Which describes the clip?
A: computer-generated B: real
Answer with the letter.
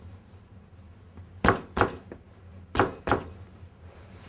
B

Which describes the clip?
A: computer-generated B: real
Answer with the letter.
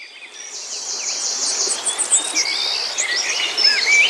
B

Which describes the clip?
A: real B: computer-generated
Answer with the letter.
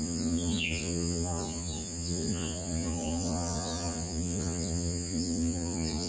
B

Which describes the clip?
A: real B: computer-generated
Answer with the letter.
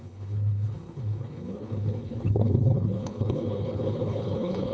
B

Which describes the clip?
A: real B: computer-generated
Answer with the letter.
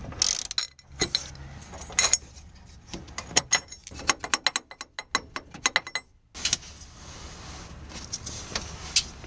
A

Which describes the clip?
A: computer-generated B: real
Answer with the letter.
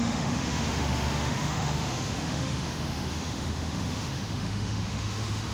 A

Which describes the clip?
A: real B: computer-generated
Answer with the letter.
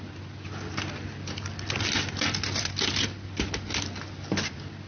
A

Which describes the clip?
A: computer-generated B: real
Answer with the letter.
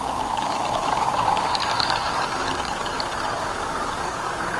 A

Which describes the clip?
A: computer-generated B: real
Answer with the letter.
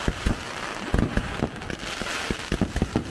B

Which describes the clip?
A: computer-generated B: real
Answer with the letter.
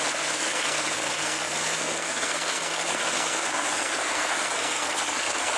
A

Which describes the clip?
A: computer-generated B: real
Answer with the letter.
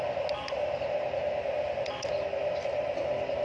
B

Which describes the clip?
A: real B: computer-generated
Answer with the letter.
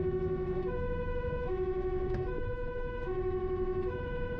B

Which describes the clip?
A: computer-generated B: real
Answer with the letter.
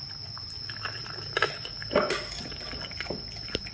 B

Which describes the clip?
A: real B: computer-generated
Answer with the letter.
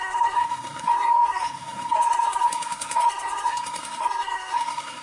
B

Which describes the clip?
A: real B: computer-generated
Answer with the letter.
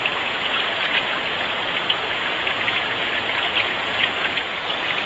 B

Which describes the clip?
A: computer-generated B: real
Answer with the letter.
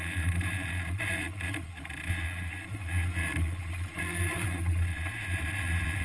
A